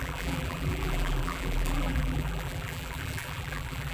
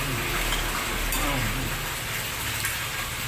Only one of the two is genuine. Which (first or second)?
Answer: second